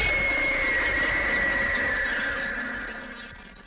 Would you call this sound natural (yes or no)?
yes